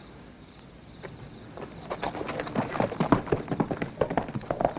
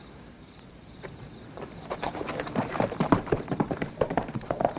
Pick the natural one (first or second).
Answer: first